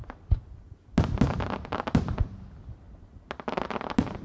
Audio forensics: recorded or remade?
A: recorded